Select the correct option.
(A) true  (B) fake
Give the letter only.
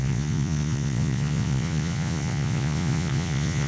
B